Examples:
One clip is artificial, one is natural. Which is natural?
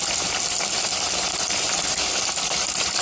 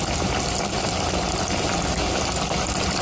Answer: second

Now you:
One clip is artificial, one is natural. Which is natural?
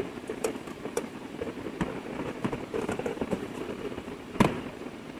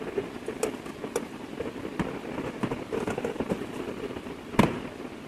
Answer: second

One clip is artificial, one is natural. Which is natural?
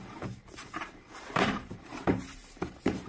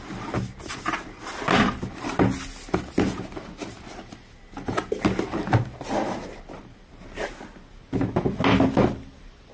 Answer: second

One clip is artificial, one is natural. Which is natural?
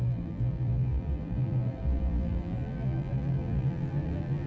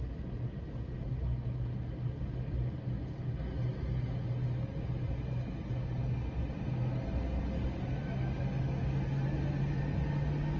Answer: second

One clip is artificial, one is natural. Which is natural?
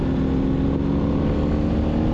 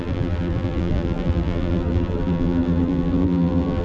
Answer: first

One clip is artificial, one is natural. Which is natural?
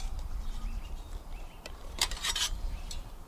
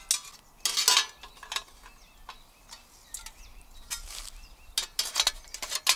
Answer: second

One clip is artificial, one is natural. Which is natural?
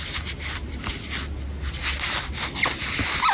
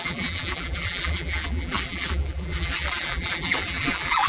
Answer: first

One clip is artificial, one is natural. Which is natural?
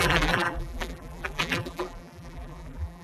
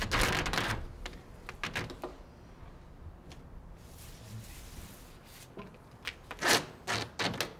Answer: second